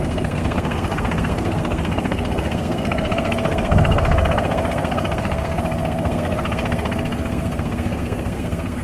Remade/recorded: remade